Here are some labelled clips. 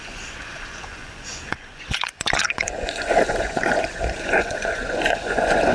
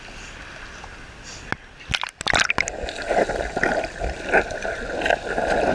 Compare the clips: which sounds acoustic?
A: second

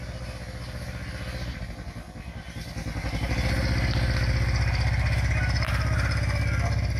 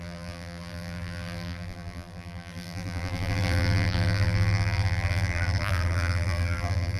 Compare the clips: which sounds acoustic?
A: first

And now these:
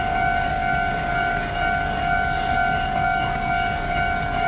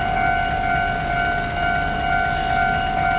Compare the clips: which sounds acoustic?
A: second